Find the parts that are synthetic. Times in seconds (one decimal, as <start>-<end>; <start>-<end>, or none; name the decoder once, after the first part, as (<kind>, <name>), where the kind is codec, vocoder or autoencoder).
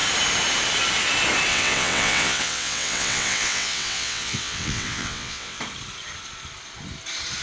1.5-5.6 (vocoder, WaveNeXt)